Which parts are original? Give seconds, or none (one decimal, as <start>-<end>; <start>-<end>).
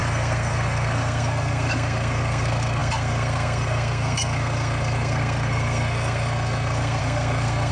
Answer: none